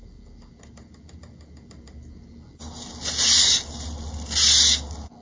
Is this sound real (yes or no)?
yes